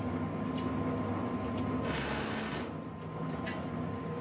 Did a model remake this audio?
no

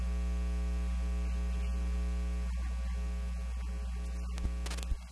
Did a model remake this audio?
no